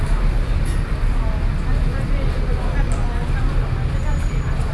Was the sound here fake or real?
real